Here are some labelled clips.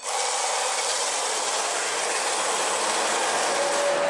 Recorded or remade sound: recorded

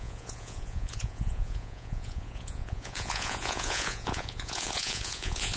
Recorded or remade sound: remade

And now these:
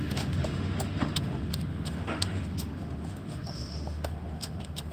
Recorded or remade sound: remade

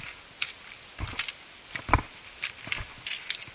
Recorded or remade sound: recorded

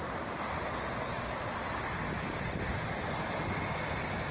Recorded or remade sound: remade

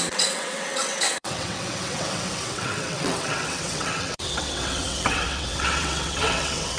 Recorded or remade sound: remade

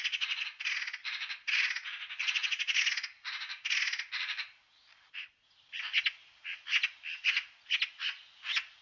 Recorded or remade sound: recorded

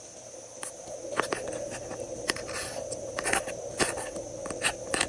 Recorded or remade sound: recorded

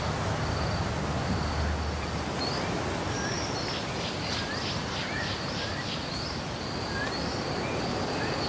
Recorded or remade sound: recorded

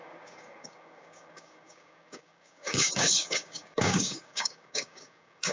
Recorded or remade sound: remade